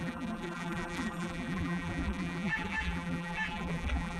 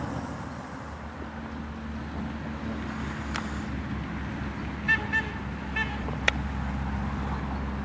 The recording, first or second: second